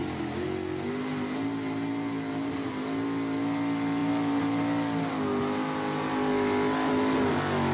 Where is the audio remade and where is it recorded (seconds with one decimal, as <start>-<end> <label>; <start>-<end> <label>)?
0.0-7.7 recorded